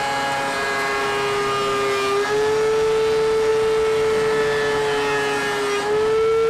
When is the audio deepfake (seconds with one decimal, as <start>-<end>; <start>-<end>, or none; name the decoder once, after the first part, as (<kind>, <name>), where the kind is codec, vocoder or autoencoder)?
none